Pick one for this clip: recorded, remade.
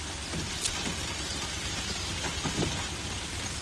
recorded